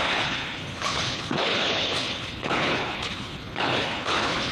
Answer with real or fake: fake